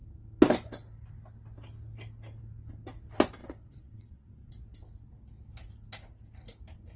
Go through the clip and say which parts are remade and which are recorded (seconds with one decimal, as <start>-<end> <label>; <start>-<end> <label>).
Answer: 0.0-3.4 recorded; 3.4-4.5 remade; 4.5-7.0 recorded